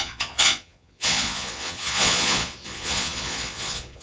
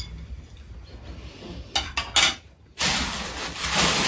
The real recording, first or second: second